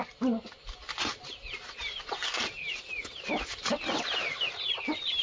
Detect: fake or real real